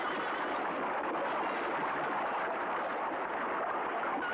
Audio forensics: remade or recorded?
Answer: recorded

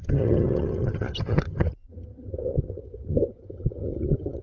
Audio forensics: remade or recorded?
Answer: remade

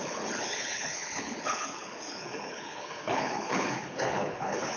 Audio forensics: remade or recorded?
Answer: remade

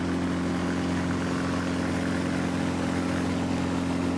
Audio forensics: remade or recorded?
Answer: recorded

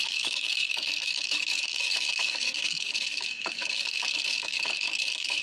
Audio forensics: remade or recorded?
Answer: remade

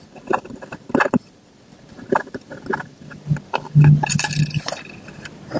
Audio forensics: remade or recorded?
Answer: recorded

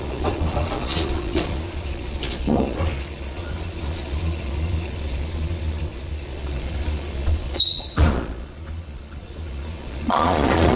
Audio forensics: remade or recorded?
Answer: remade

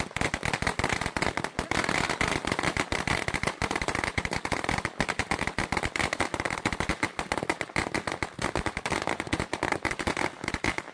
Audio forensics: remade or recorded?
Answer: recorded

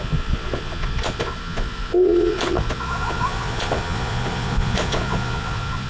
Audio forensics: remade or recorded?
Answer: remade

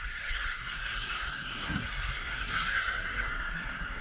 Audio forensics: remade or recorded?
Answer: remade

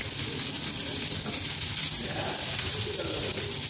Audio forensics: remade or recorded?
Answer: recorded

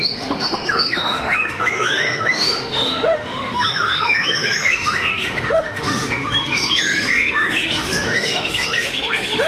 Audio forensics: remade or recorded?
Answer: remade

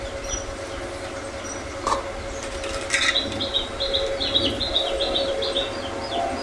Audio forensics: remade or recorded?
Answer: recorded